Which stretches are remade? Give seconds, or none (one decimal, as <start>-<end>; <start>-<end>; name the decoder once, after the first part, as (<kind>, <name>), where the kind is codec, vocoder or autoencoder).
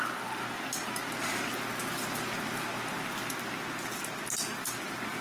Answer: none